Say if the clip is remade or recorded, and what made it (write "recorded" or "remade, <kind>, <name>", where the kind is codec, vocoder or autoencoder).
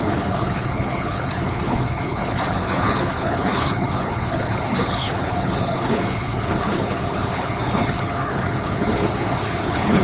remade, codec, HILCodec